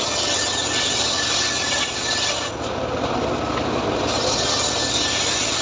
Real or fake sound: real